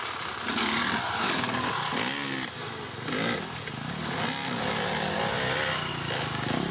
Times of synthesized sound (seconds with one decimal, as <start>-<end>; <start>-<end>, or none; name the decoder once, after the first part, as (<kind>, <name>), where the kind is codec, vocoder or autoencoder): none